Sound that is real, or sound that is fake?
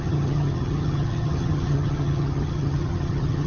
fake